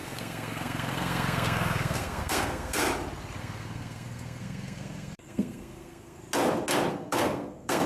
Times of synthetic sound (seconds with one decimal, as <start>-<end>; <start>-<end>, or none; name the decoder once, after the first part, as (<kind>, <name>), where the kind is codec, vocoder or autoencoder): 0.0-2.8 (codec, SNAC); 3.4-6.2; 6.9-7.9